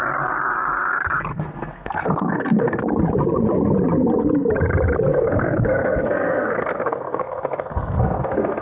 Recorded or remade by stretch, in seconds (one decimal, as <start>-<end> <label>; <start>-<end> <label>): 0.0-1.3 recorded; 1.3-2.8 remade; 2.8-5.1 recorded; 5.1-8.6 remade